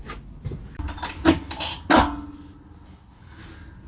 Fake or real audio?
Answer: real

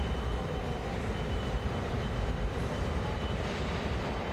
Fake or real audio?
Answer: fake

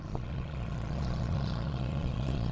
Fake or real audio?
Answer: fake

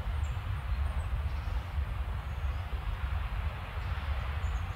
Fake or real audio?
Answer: real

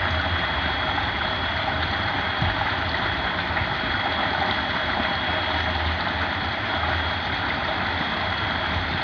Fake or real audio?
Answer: real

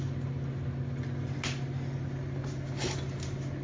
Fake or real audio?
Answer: real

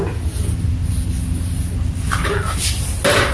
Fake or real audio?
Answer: real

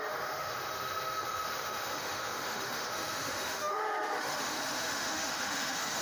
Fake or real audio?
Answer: fake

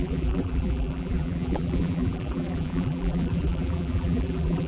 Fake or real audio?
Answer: fake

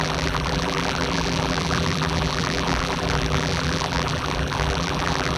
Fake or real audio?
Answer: fake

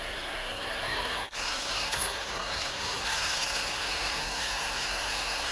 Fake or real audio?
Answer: fake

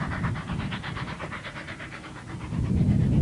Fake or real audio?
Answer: fake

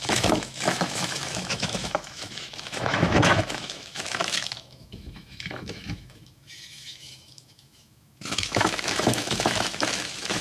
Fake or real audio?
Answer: fake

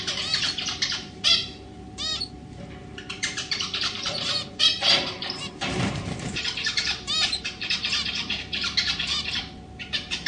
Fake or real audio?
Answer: fake